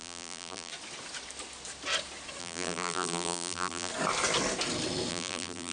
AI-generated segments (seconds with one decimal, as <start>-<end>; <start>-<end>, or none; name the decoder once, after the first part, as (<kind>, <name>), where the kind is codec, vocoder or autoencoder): 0.0-0.7 (vocoder, BigVGAN v2); 2.4-3.9; 5.1-5.7